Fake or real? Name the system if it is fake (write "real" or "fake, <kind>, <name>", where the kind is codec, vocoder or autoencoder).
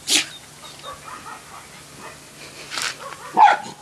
real